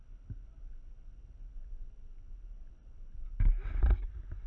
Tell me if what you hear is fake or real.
real